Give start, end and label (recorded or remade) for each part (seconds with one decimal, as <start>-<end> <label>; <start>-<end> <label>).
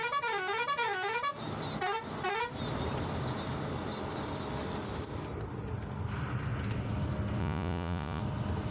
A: 0.0-7.4 recorded; 7.4-8.2 remade; 8.2-8.7 recorded